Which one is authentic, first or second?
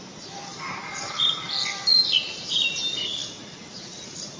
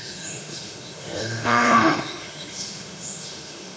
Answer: first